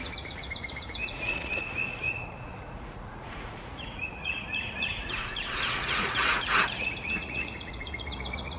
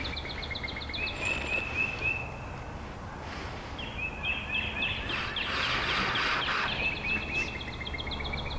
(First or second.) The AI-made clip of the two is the first